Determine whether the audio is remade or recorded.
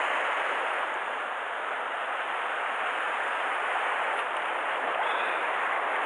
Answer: recorded